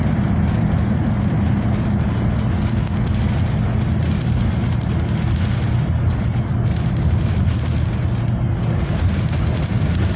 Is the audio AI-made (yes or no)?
no